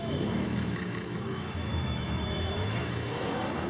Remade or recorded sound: remade